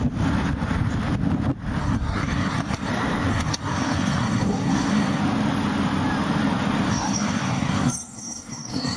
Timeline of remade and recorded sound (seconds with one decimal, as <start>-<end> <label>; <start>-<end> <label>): 0.0-1.8 recorded; 1.8-2.9 remade; 2.9-3.3 recorded; 3.3-5.2 remade; 5.2-6.9 recorded; 6.9-9.0 remade